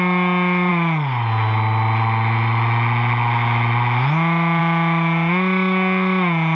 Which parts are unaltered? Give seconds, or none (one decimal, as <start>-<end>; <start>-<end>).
0.0-6.5